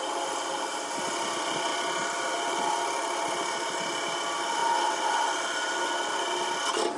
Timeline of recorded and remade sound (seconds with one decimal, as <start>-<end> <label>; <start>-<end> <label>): 0.0-7.0 recorded

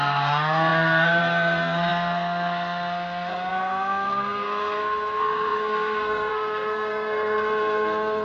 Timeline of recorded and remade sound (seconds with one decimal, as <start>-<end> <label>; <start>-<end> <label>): 0.0-8.2 remade

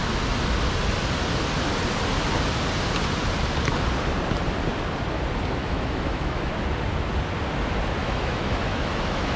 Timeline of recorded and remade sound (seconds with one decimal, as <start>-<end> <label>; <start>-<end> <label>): 0.0-5.6 recorded; 5.6-6.5 remade; 6.5-8.0 recorded; 8.0-9.4 remade

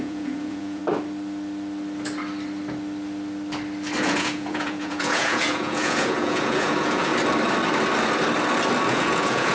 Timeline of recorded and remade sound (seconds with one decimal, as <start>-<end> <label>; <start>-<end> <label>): 0.0-0.8 remade; 0.8-4.0 recorded; 4.0-7.1 remade; 7.1-8.9 recorded; 8.9-9.5 remade

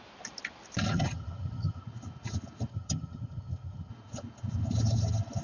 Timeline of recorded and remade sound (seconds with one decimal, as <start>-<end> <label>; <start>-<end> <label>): 0.0-0.9 recorded; 0.9-1.8 remade; 1.8-2.7 recorded; 2.7-3.9 remade; 3.9-5.4 recorded